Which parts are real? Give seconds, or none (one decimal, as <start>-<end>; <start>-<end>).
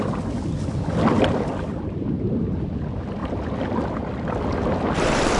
0.0-5.4